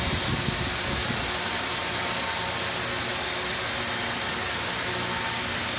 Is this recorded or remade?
recorded